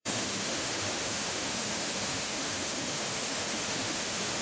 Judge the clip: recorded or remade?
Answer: remade